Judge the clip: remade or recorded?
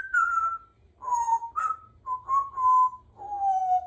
recorded